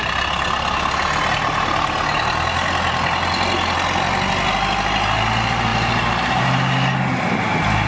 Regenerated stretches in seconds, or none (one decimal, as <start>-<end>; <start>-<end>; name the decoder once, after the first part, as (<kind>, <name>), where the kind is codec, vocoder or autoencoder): 5.7-6.4 (vocoder, BigVGAN v2)